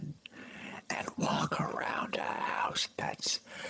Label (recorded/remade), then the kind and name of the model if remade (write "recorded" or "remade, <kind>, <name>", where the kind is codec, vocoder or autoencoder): remade, vocoder, HiFi-GAN